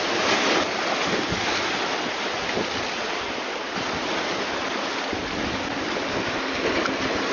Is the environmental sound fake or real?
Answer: real